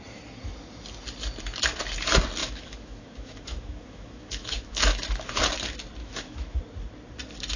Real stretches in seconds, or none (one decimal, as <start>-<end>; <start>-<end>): 0.0-2.4; 5.4-6.0; 6.6-7.6